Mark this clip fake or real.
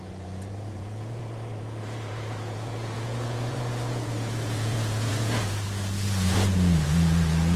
fake